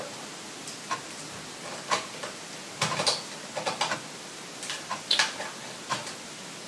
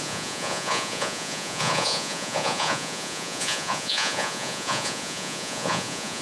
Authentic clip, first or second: first